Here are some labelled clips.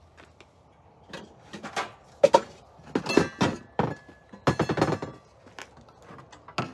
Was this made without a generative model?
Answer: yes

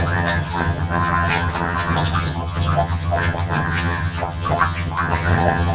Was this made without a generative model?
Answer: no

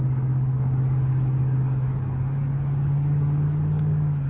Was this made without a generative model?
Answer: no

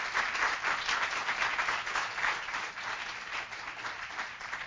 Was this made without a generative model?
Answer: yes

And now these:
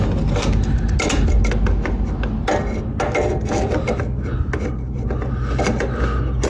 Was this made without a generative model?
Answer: yes